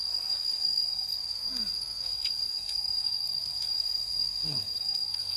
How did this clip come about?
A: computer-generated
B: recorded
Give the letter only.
A